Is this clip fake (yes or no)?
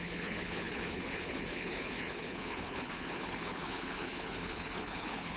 yes